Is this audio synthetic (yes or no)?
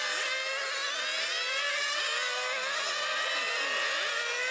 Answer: no